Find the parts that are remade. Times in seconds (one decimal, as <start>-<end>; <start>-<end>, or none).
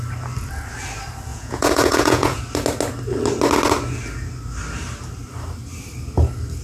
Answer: 1.3-2.4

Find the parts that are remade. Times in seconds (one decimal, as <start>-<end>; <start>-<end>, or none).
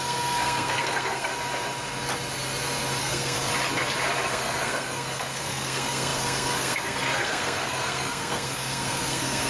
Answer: 0.0-1.3; 3.0-3.5; 4.3-9.5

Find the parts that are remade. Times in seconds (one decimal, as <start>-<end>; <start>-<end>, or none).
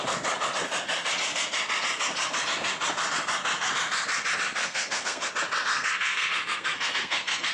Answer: 4.6-5.3; 5.7-7.5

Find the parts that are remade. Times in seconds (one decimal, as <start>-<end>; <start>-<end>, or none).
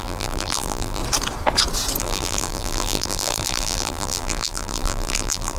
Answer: 0.0-1.0; 2.0-5.6